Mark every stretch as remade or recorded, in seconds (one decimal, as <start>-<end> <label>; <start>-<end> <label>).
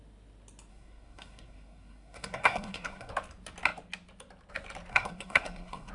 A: 0.0-0.7 recorded; 0.7-3.1 remade; 3.1-4.9 recorded; 4.9-5.9 remade